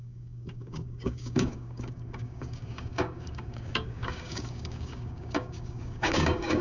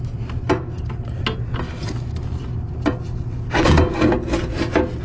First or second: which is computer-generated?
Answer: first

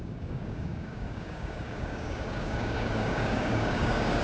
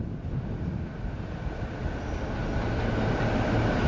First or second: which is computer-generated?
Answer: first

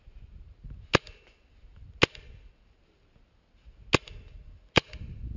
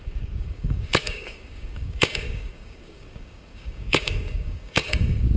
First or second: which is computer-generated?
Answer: second